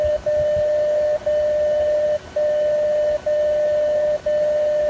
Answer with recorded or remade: recorded